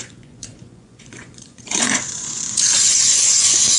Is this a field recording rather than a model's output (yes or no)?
no